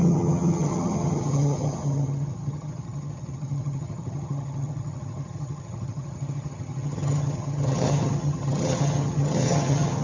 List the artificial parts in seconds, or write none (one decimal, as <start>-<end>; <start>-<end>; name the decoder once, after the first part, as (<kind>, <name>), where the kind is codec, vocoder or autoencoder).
0.0-10.0 (vocoder, HiFi-GAN)